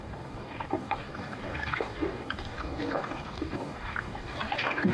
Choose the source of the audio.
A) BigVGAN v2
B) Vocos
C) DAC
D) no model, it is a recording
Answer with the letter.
C